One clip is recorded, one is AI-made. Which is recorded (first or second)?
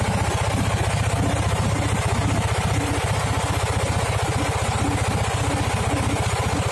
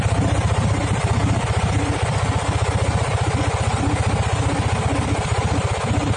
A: first